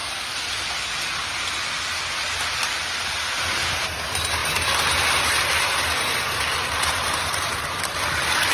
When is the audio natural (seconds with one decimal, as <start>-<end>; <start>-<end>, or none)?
0.0-8.5